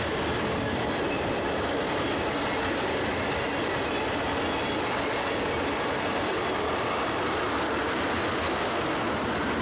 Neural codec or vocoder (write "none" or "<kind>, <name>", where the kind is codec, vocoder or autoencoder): none